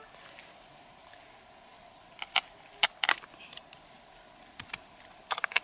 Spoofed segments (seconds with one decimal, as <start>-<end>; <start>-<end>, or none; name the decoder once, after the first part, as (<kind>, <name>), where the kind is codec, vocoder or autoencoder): none